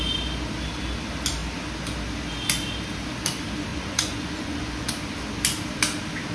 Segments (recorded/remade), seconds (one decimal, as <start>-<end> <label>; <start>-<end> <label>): 0.0-3.7 recorded; 3.7-4.9 remade; 4.9-6.3 recorded